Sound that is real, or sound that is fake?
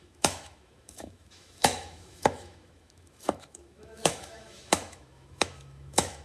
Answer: fake